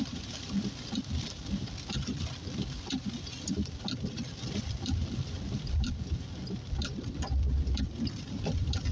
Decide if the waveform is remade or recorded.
remade